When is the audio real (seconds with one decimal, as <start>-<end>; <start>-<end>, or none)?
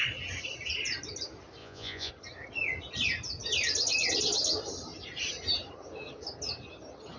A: 0.0-1.6; 2.1-7.2